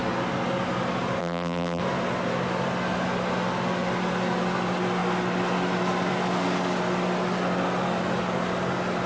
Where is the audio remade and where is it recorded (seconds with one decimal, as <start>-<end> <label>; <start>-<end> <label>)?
0.0-1.2 recorded; 1.2-1.8 remade; 1.8-9.1 recorded